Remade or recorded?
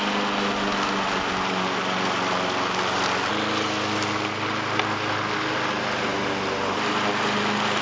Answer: recorded